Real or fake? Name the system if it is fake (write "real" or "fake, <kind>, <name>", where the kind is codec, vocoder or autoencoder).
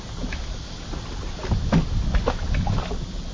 real